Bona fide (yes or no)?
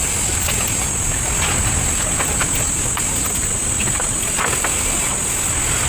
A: yes